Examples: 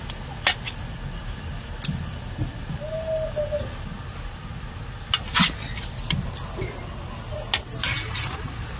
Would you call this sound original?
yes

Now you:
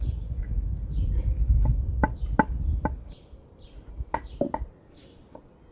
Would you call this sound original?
yes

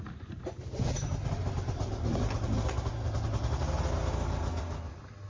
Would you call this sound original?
yes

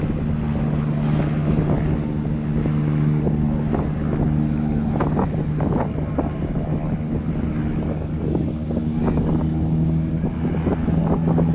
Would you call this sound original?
yes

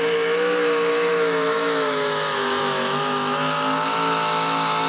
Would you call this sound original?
no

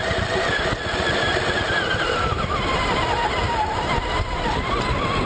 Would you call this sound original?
yes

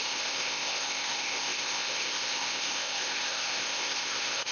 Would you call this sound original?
no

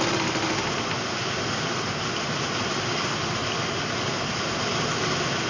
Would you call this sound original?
yes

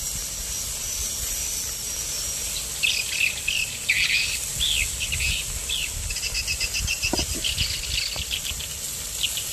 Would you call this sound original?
yes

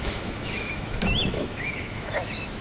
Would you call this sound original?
no